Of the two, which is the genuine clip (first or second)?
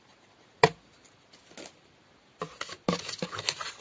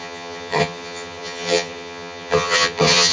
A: first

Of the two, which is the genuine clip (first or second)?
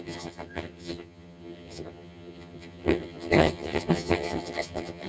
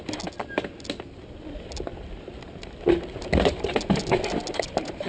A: second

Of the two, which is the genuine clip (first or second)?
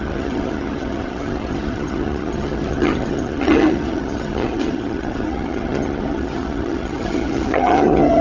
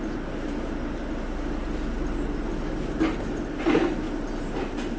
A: second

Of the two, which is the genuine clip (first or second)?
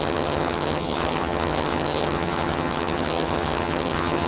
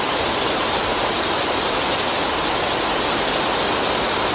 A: second